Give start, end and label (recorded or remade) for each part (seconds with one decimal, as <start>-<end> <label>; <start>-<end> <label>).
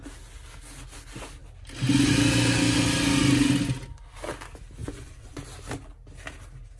0.0-4.8 recorded; 4.8-5.4 remade; 5.4-6.8 recorded